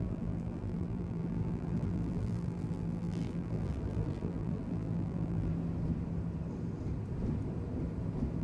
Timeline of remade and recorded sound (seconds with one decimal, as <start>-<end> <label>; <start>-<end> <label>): 0.0-5.5 remade; 5.5-8.4 recorded